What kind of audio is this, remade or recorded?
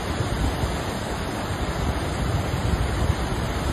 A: recorded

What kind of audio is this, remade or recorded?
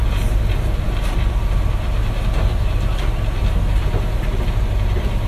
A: remade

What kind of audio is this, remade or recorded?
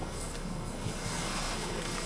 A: remade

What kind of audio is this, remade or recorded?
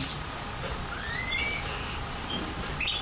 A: recorded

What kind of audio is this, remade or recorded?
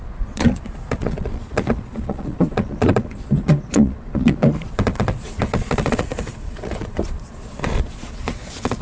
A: remade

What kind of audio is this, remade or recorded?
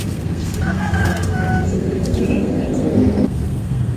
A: remade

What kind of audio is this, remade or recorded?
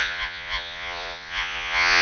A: remade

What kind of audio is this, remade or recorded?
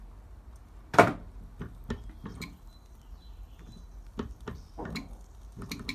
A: recorded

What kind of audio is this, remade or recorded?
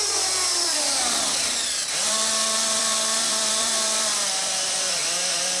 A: remade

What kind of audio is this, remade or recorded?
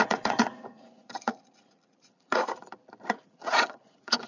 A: remade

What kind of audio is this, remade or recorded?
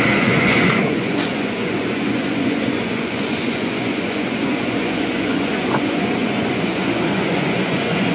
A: remade